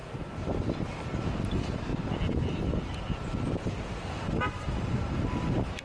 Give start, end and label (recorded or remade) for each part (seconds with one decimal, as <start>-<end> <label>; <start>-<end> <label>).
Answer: 0.0-1.4 recorded; 1.4-1.9 remade; 1.9-4.1 recorded; 4.1-5.8 remade